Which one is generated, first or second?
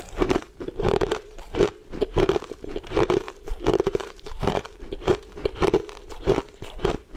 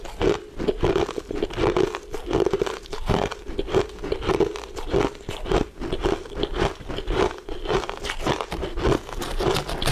first